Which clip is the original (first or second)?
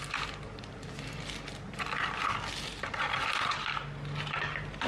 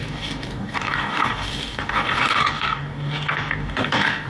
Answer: first